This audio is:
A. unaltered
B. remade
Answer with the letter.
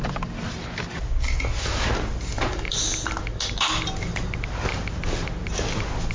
A